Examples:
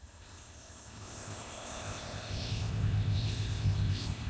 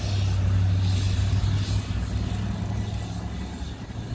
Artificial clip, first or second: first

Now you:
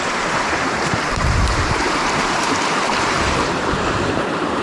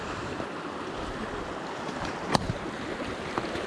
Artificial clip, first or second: first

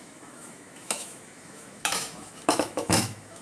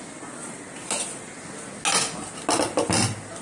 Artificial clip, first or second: first